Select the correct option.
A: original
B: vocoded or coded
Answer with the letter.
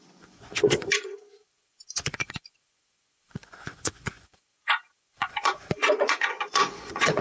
B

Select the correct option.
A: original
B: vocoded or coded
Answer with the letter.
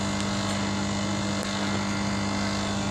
A